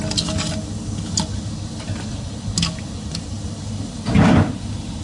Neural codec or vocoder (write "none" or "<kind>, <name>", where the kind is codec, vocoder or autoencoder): none